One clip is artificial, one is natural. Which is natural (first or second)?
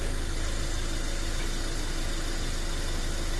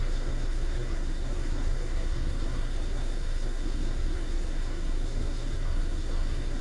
first